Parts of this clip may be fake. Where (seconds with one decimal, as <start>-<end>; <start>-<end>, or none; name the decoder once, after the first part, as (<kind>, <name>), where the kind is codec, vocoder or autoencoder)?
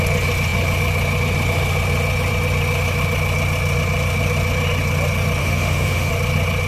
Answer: 5.4-6.1 (autoencoder, DAC-VAE)